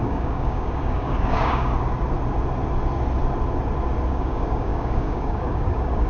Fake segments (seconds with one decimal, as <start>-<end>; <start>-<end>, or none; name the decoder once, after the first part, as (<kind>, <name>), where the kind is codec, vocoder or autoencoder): 0.0-1.7 (codec, DAC); 4.1-6.1

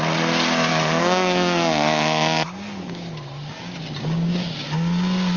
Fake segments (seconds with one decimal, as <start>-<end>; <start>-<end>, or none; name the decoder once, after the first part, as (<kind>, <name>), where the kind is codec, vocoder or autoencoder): 0.7-3.1 (codec, DAC)

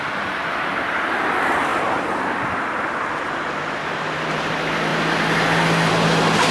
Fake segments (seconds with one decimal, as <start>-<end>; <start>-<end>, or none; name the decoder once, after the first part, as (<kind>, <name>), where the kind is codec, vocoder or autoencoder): none

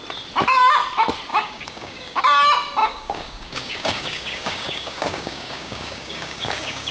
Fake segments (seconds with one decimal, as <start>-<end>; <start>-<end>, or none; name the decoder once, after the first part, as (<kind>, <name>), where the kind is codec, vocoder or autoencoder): 1.3-2.2 (codec, DAC); 2.8-6.9

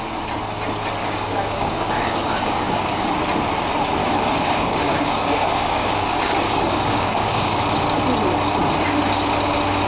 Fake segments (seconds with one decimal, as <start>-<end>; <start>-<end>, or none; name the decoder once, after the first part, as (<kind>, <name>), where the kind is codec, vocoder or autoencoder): 1.0-3.1 (codec, DAC); 4.0-7.6